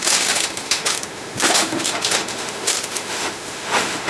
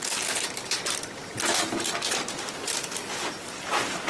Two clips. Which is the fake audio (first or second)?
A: first